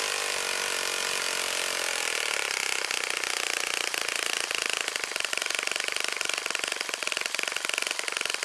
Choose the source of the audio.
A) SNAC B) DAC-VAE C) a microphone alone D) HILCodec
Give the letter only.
C